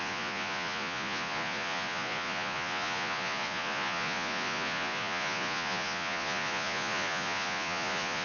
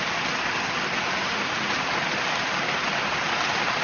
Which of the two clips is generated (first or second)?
first